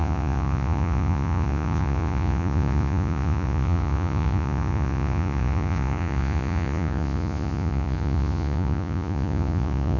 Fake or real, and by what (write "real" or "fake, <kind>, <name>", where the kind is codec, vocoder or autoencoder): fake, vocoder, Vocos